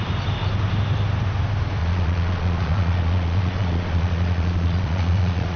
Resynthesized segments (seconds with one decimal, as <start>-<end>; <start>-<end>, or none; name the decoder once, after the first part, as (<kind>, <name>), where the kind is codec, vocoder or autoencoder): 1.8-5.6 (vocoder, Vocos)